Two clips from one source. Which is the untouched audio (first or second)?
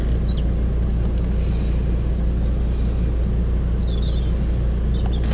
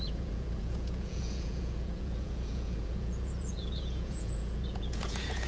first